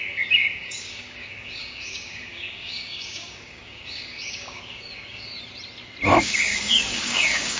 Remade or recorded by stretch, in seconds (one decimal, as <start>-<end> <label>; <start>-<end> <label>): 0.0-5.3 remade; 5.3-6.2 recorded; 6.2-7.6 remade